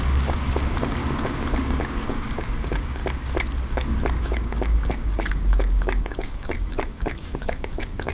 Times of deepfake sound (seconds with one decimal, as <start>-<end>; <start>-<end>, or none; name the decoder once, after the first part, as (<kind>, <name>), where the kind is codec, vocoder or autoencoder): 0.0-1.0 (codec, DAC); 1.6-3.0; 4.2-8.1